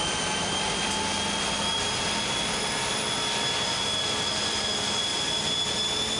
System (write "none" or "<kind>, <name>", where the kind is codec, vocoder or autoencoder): none